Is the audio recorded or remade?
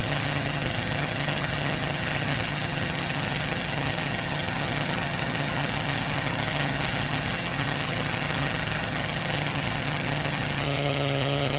remade